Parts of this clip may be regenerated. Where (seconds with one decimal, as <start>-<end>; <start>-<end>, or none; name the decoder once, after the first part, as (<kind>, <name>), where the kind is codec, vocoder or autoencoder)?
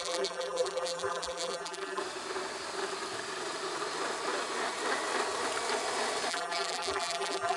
0.0-2.0 (vocoder, BigVGAN v2); 6.3-7.6